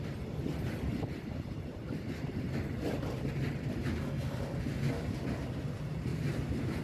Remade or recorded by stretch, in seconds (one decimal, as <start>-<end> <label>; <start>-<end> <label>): 0.0-0.4 recorded; 0.4-3.3 remade; 3.3-6.1 recorded; 6.1-6.8 remade